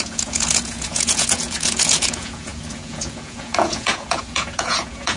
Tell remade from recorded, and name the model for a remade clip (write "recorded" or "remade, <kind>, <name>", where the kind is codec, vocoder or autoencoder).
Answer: remade, vocoder, Vocos